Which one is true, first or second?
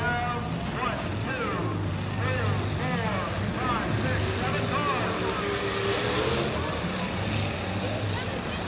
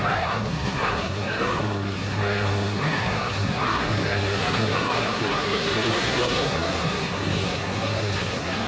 first